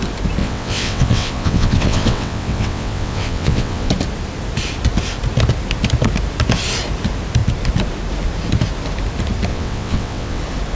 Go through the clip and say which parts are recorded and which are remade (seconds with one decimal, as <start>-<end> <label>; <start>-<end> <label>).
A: 0.0-0.4 recorded; 0.4-3.9 remade; 3.9-9.5 recorded; 9.5-10.4 remade; 10.4-10.8 recorded